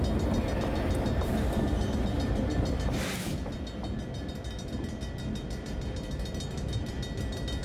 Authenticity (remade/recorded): recorded